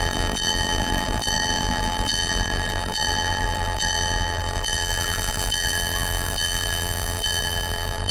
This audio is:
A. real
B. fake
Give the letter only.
B